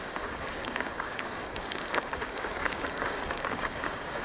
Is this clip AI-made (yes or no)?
yes